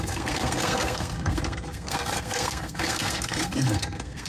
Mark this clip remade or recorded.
remade